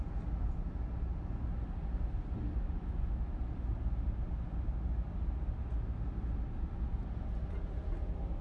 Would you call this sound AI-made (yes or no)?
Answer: no